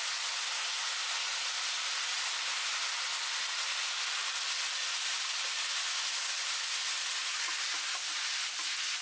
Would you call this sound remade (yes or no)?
no